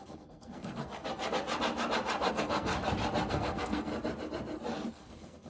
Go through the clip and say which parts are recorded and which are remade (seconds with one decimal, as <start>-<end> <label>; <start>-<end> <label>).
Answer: 0.0-1.0 remade; 1.0-2.3 recorded; 2.3-2.7 remade; 2.7-3.3 recorded; 3.3-3.9 remade; 3.9-4.9 recorded; 4.9-5.5 remade